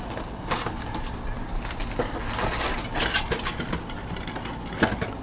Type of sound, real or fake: real